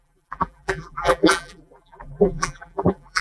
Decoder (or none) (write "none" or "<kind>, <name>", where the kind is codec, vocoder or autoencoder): vocoder, BigVGAN v2